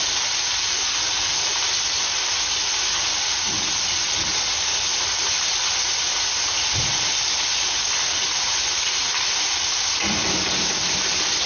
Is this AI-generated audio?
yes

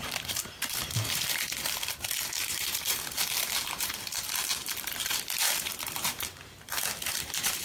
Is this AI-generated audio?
yes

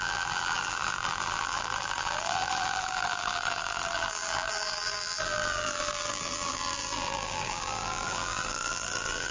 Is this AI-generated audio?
yes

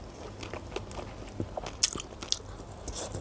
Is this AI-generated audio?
no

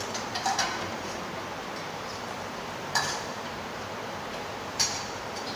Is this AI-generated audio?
yes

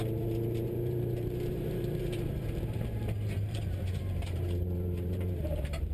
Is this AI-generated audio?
yes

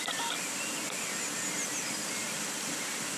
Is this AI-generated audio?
no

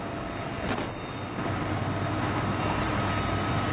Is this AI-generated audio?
no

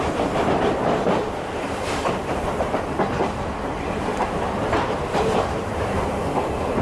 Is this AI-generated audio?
yes